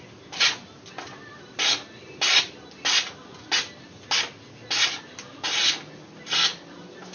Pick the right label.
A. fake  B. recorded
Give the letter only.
B